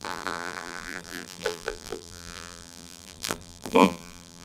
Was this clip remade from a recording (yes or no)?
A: yes